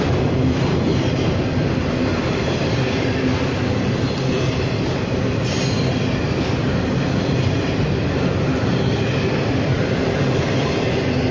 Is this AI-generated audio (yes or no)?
no